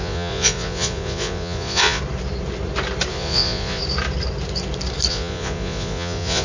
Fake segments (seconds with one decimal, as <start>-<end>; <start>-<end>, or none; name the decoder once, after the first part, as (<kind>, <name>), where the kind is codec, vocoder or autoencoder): 0.0-2.0 (vocoder, Vocos); 3.1-3.8; 5.1-6.4